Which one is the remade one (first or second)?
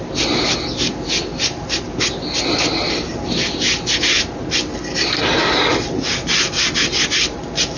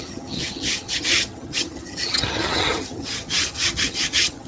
second